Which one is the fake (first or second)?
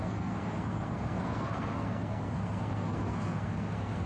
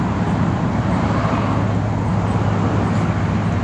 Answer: first